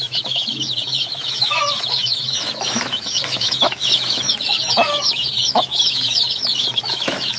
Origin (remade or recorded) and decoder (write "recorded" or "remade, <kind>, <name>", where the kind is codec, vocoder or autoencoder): remade, autoencoder, DAC-VAE